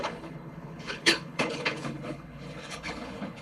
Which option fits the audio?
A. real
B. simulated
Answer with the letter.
B